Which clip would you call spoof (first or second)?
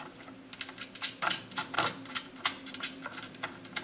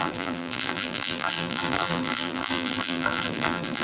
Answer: second